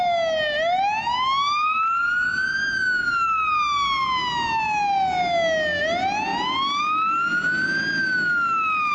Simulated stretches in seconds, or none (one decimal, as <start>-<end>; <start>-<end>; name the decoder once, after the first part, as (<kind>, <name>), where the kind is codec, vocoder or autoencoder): none